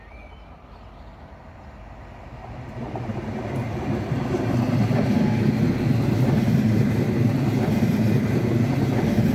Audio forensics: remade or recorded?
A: recorded